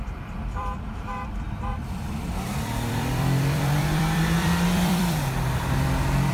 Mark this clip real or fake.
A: fake